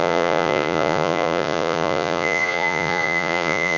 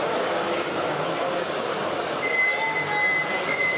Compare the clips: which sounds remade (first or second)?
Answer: first